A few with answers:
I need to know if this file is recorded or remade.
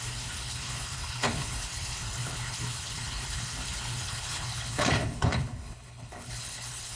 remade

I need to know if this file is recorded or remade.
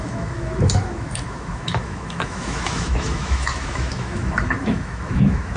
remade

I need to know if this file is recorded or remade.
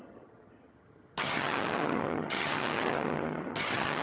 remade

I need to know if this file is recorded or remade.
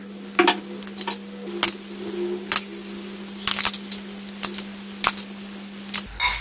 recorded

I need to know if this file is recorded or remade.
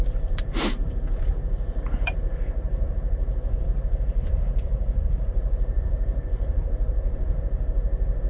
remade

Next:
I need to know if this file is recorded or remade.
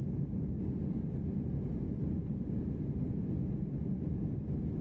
recorded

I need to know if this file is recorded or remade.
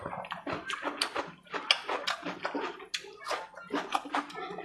recorded